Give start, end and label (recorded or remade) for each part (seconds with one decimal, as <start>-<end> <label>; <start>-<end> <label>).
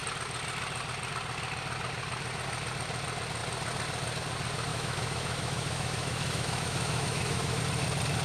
0.0-4.7 recorded; 4.7-7.6 remade; 7.6-8.2 recorded